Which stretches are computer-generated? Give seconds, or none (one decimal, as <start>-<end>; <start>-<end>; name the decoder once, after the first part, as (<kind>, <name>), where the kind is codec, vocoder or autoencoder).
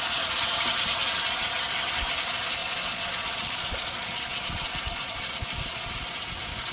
2.6-5.2 (vocoder, Vocos)